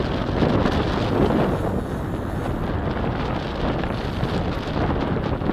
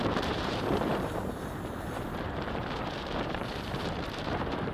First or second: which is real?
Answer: first